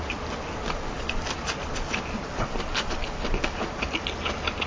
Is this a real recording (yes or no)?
yes